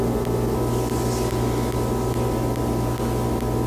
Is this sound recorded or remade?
recorded